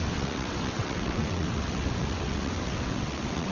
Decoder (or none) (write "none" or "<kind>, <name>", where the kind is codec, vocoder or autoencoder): vocoder, WaveNeXt